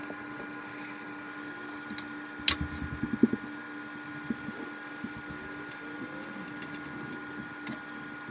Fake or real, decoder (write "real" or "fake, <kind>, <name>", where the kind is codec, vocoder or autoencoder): real